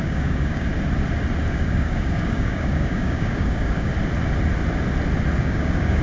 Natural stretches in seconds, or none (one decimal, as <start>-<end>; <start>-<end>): 0.7-1.5; 3.9-5.4